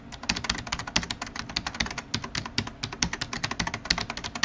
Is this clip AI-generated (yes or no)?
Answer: no